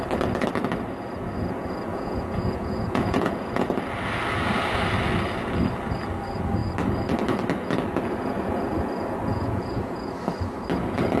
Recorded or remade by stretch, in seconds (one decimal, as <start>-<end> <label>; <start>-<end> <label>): 0.0-1.9 recorded; 1.9-3.8 remade; 3.8-9.3 recorded; 9.3-10.1 remade; 10.1-11.2 recorded